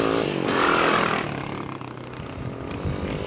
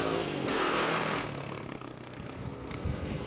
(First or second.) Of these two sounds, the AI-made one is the second